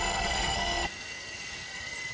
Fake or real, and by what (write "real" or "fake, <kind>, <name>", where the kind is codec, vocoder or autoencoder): fake, codec, SNAC